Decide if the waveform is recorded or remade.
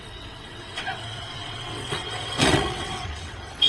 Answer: remade